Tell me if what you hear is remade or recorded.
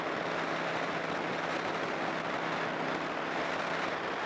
recorded